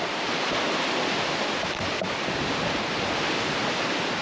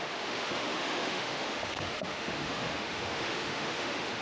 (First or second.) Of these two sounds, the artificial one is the second